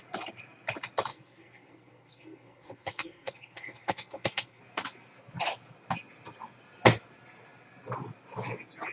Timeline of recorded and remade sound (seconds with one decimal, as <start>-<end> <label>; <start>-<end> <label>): 0.0-1.1 recorded; 1.1-4.6 remade; 4.6-8.9 recorded